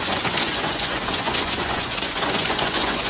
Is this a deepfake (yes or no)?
yes